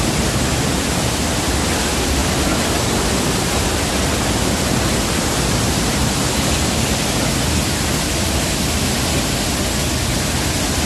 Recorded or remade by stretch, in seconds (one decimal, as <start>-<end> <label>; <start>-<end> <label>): 0.0-10.9 recorded